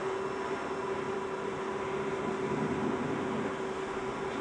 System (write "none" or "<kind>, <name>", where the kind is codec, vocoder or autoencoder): none